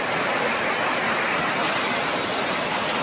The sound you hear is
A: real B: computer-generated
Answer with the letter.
A